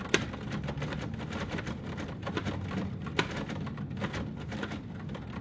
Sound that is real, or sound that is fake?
real